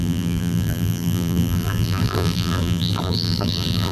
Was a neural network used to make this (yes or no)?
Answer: yes